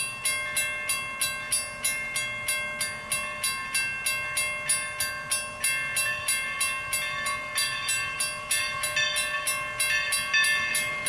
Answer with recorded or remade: recorded